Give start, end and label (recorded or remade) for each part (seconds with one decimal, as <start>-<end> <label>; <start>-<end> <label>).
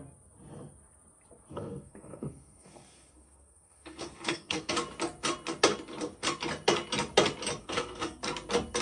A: 0.0-1.5 recorded; 1.5-4.7 remade; 4.7-7.6 recorded; 7.6-8.2 remade; 8.2-8.8 recorded